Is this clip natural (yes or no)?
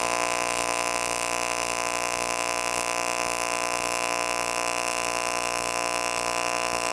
yes